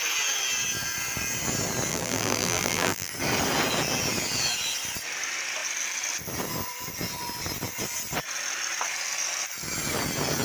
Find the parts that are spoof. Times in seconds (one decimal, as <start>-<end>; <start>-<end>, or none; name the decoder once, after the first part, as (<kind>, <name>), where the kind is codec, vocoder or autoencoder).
1.9-3.1 (vocoder, BigVGAN v2)